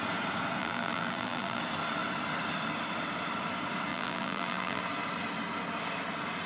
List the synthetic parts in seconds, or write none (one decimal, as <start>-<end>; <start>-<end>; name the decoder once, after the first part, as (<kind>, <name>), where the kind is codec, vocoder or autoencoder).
0.6-1.6 (vocoder, BigVGAN v2); 3.9-4.8